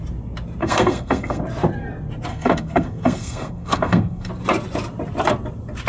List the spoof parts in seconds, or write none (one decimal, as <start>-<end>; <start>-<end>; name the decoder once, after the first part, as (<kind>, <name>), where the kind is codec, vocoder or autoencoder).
0.6-1.4 (codec, SNAC); 2.3-4.3